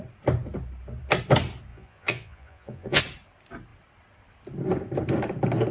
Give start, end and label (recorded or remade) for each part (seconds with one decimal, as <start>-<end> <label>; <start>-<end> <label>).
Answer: 0.0-1.7 recorded; 1.7-3.0 remade; 3.0-5.7 recorded